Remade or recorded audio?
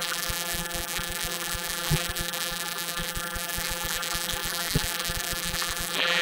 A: remade